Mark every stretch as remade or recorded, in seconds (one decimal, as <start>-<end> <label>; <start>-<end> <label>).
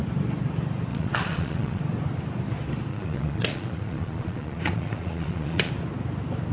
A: 0.0-0.9 recorded; 0.9-1.8 remade; 1.8-2.9 recorded; 2.9-5.7 remade; 5.7-6.5 recorded